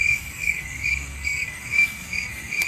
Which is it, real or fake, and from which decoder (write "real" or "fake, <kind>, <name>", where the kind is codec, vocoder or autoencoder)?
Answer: fake, codec, SNAC